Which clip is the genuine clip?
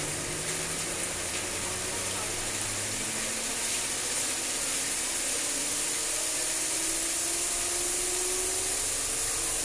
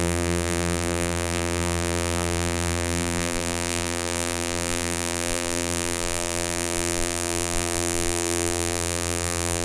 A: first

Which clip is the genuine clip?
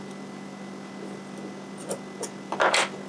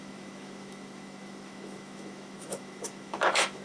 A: first